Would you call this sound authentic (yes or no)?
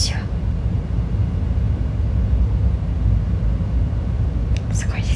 yes